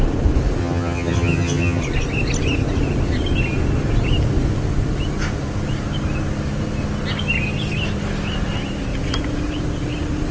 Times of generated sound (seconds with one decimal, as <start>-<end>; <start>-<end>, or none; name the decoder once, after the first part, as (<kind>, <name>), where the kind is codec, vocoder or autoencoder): 0.6-1.8 (vocoder, HiFi-GAN)